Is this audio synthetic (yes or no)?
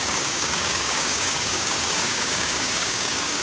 yes